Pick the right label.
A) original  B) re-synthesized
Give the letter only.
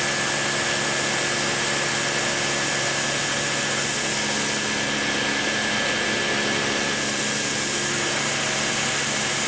A